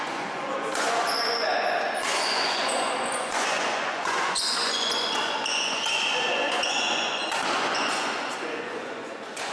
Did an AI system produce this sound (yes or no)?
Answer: yes